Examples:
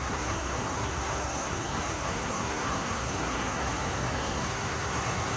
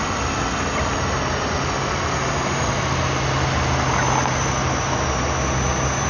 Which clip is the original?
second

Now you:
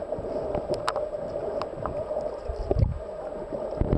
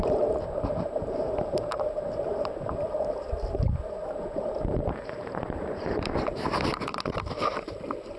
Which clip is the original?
first